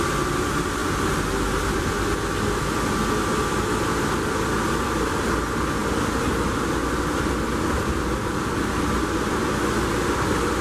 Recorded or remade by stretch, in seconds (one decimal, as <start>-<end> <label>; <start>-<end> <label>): 0.0-10.6 recorded